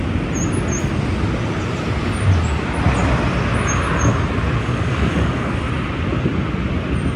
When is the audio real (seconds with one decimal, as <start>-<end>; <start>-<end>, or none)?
0.0-4.6; 5.7-7.2